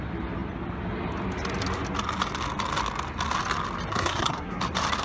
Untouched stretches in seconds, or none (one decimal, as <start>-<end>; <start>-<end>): 0.0-3.9; 4.6-5.0